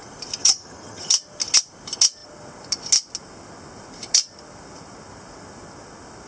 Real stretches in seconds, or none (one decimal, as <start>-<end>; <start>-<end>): 0.0-0.4; 1.1-6.3

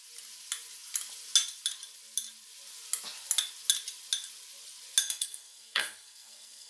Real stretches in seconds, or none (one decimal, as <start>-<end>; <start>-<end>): 0.0-5.0

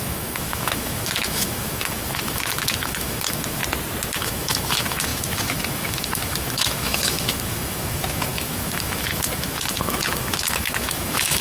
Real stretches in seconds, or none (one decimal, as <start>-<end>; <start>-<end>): 3.6-4.1

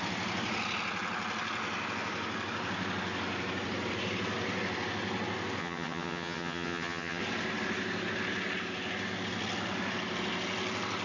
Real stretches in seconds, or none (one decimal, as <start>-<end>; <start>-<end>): 0.0-5.6; 7.2-11.0

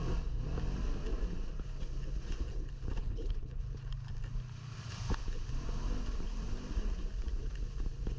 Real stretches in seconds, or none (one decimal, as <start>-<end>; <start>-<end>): 0.0-3.0; 3.6-8.2

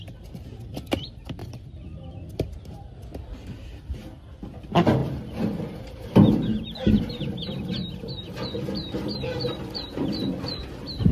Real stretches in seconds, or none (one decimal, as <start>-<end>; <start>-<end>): 0.0-1.4; 3.0-5.0; 9.4-11.1

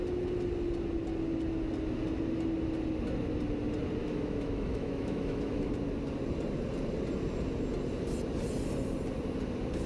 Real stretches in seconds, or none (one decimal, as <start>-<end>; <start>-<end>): 0.0-4.0; 5.7-9.9